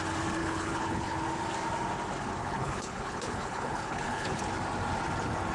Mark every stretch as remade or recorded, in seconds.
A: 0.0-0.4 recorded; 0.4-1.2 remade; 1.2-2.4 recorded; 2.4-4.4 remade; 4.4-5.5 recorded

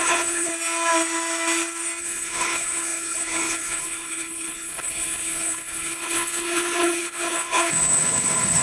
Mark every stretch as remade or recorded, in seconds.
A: 0.0-0.5 remade; 0.5-2.0 recorded; 2.0-8.6 remade

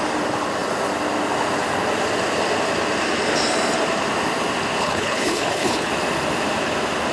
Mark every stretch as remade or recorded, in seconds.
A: 0.0-4.8 recorded; 4.8-5.9 remade; 5.9-7.1 recorded

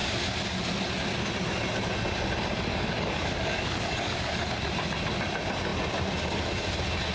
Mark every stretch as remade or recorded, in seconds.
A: 0.0-2.7 recorded; 2.7-4.5 remade; 4.5-7.1 recorded

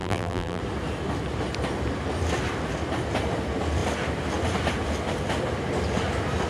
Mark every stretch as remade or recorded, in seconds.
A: 0.0-0.6 remade; 0.6-6.5 recorded

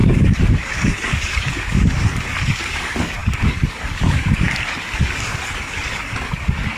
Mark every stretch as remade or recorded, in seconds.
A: 0.0-6.8 remade

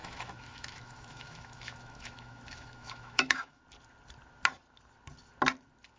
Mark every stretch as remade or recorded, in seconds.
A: 0.0-3.6 remade; 3.6-6.0 recorded